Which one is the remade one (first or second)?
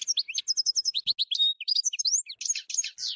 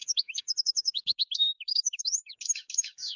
second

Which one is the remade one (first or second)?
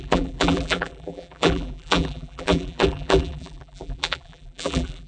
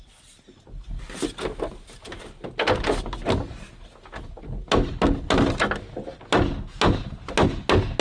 first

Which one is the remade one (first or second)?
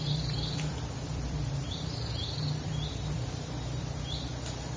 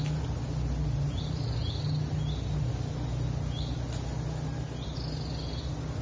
first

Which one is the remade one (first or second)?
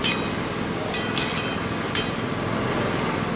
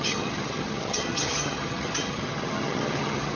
second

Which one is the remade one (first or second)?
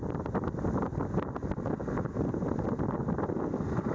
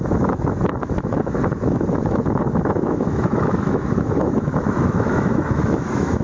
second